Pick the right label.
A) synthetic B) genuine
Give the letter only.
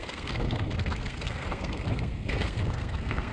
A